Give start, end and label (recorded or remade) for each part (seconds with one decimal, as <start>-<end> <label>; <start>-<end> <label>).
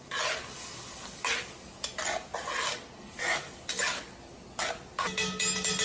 0.0-5.8 recorded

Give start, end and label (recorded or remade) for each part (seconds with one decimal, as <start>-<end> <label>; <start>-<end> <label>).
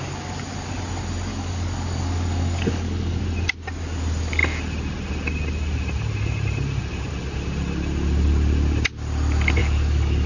0.0-1.3 recorded; 1.3-3.2 remade; 3.2-9.6 recorded; 9.6-10.3 remade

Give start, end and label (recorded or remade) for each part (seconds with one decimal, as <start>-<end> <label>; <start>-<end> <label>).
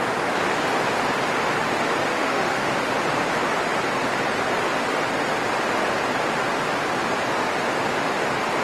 0.0-2.1 recorded; 2.1-2.9 remade; 2.9-8.6 recorded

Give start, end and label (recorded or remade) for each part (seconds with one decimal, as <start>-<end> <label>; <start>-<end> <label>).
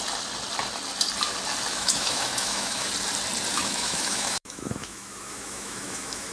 0.0-1.7 recorded; 1.7-2.9 remade; 2.9-3.5 recorded; 3.5-6.3 remade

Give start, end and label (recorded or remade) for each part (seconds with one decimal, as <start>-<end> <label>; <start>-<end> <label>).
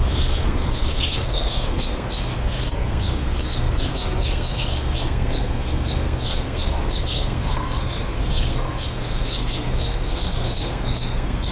0.0-11.5 remade